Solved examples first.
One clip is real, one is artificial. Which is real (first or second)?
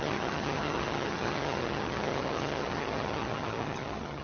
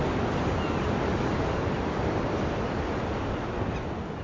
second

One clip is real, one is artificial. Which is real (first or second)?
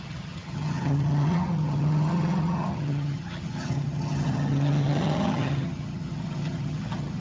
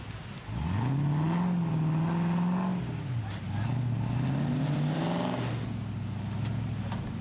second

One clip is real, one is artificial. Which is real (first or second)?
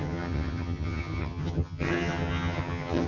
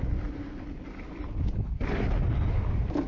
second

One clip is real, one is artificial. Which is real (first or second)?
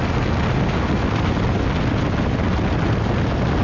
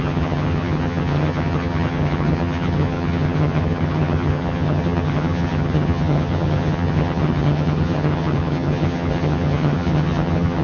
first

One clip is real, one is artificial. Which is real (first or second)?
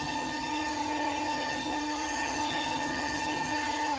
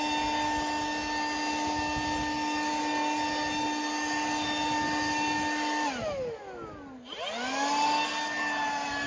second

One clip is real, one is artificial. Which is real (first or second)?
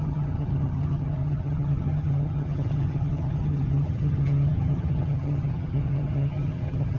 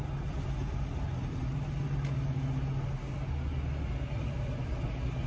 second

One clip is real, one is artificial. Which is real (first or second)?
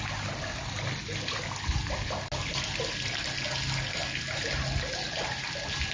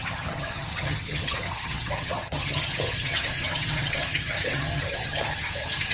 first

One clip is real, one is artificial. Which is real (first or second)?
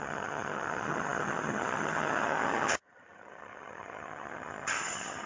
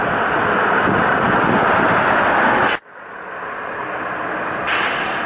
second